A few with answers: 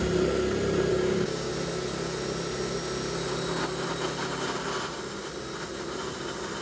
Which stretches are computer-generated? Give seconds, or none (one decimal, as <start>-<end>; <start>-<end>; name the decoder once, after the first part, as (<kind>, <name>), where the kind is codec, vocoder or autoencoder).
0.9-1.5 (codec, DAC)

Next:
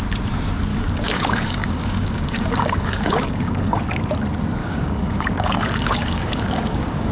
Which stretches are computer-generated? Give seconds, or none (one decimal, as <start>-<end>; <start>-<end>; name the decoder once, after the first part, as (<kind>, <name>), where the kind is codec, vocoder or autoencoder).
0.7-4.0 (codec, DAC); 4.6-7.1

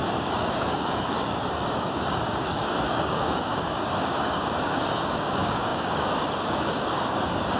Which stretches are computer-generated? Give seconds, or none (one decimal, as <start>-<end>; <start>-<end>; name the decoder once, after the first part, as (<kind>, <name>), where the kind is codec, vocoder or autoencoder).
0.0-7.6 (codec, DAC)

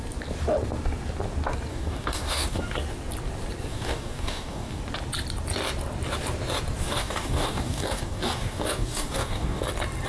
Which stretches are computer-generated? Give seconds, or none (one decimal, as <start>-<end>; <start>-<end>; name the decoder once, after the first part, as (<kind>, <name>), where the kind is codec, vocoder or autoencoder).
1.7-2.6 (codec, DAC); 3.7-4.8; 6.8-9.6

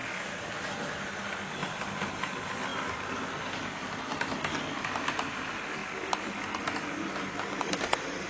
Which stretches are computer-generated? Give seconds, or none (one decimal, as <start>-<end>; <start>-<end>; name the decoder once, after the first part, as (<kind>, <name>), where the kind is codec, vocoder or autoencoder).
0.0-0.5 (codec, DAC)

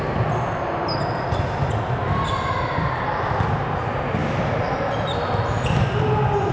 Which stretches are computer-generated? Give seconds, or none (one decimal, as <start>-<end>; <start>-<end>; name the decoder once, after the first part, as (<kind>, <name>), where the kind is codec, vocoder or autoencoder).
none

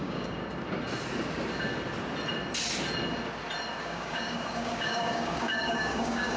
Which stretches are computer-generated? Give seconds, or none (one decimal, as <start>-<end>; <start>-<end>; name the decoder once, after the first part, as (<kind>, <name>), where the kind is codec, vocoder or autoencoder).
0.0-0.4 (codec, DAC); 3.8-6.4

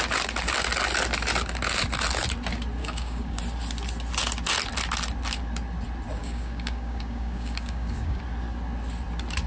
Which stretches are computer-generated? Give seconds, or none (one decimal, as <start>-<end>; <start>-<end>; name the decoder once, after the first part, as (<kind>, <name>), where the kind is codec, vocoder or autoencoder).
2.8-3.4 (codec, DAC); 6.2-8.2